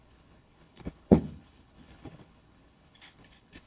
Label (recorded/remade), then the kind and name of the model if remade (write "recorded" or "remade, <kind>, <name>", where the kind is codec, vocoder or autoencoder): remade, codec, HILCodec